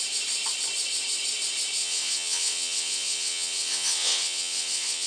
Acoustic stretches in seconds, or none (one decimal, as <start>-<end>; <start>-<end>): 0.0-1.8